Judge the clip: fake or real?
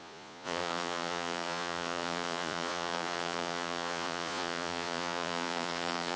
fake